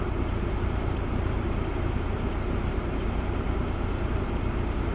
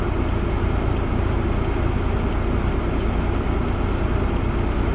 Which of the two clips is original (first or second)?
second